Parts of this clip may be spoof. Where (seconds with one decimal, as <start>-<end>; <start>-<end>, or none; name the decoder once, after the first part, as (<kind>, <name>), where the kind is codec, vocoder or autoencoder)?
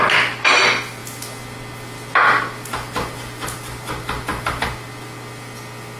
none